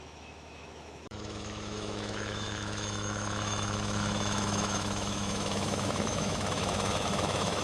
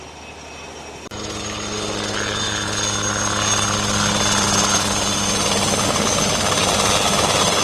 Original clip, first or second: second